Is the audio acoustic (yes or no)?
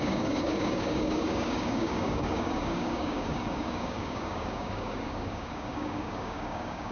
no